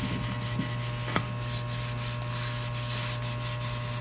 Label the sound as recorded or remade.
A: recorded